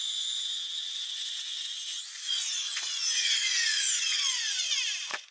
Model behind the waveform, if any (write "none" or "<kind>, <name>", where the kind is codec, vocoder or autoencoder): vocoder, Vocos